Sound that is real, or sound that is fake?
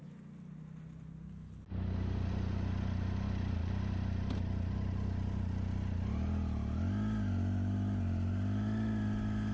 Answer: real